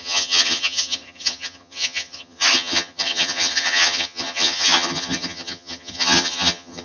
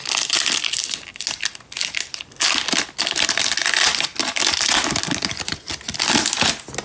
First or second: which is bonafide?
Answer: second